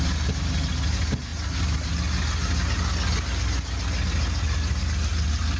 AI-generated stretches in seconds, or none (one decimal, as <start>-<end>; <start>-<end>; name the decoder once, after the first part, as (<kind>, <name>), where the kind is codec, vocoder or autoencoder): none